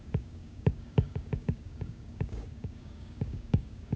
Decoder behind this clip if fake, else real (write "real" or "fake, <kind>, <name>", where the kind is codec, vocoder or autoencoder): fake, codec, DAC